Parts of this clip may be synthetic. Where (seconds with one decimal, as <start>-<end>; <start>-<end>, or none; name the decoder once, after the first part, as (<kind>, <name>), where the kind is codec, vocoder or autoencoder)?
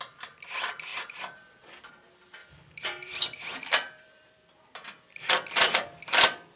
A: 0.9-1.9 (vocoder, BigVGAN v2); 2.4-4.6